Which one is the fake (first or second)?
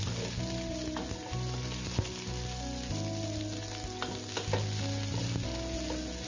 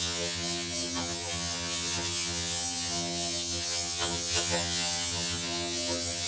second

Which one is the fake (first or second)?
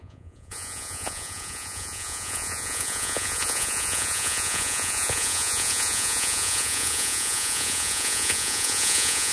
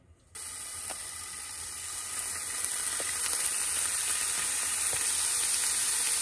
first